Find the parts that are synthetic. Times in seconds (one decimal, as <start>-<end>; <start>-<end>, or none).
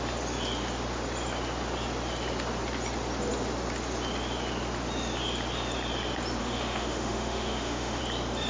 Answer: 6.4-8.0